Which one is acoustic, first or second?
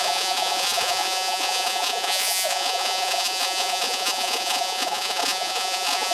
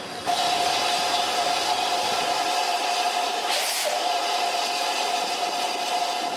second